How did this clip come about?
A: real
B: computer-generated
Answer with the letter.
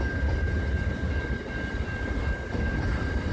A